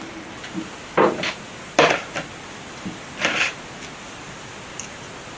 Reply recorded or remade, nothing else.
recorded